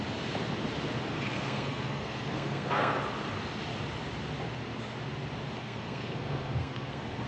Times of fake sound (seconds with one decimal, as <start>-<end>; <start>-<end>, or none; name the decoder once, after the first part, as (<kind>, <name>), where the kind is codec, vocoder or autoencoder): 1.1-3.0 (codec, SNAC); 5.6-7.3